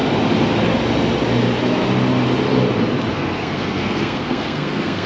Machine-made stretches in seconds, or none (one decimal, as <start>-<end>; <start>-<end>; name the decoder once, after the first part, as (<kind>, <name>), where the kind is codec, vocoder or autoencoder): 3.1-5.1 (codec, SNAC)